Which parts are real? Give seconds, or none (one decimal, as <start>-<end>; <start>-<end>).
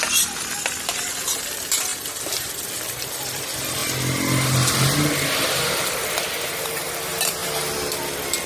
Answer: 1.9-2.5; 3.8-6.9; 7.4-8.5